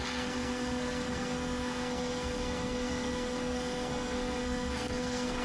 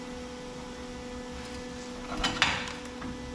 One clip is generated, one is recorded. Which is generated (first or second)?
first